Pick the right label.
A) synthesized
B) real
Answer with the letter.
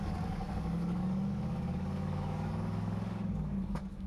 A